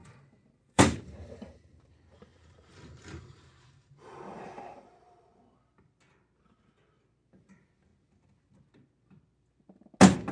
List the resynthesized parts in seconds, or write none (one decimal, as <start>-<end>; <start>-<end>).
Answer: 0.0-1.9; 2.3-5.4